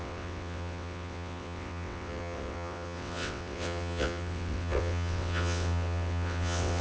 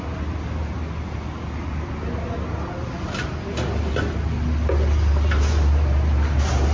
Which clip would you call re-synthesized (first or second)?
first